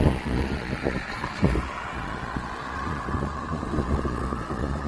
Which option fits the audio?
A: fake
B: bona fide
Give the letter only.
A